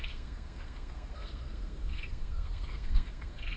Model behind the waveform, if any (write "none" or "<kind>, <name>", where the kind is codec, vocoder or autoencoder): codec, SNAC